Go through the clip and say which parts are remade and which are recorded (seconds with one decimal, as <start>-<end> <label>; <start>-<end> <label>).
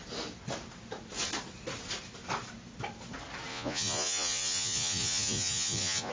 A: 0.0-3.5 recorded; 3.5-6.1 remade